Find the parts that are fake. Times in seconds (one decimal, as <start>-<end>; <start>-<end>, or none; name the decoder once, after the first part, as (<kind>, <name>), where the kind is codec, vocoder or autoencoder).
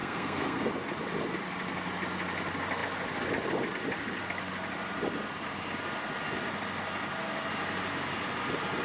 0.0-0.7 (codec, SNAC)